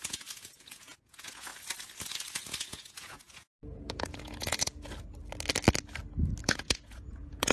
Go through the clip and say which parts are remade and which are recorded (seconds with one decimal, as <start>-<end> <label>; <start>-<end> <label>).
0.0-1.5 remade; 1.5-2.6 recorded; 2.6-4.7 remade; 4.7-6.4 recorded; 6.4-7.5 remade